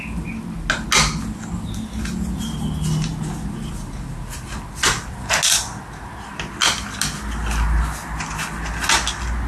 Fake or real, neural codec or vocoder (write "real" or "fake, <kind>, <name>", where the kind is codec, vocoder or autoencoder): real